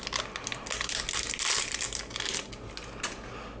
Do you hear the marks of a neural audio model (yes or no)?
no